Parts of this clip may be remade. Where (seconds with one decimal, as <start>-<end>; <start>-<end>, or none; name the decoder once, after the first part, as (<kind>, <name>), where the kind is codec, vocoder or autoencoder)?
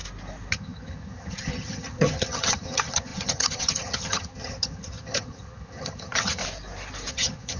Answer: 0.5-6.4 (vocoder, HiFi-GAN); 7.1-7.6